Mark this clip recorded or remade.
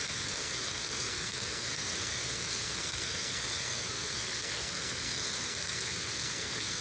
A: remade